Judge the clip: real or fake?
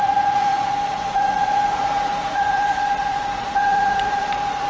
fake